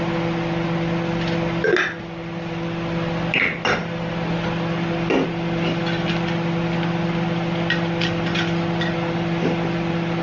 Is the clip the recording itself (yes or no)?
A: yes